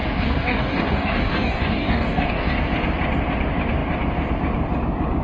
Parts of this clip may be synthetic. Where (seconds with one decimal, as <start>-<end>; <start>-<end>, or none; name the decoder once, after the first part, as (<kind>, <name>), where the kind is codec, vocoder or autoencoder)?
0.0-2.6 (codec, DAC)